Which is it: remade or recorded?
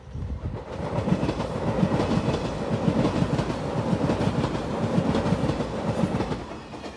recorded